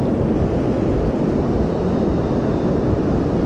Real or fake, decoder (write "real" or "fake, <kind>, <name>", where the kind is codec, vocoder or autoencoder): real